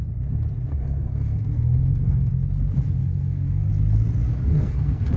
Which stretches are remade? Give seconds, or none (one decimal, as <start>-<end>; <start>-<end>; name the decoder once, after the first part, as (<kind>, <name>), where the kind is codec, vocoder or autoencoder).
0.7-2.3 (codec, SNAC); 3.0-3.7; 4.3-5.2